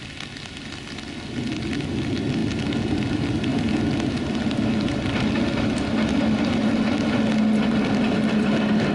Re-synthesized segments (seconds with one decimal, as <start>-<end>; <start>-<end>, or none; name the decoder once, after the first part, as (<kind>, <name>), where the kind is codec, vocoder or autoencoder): none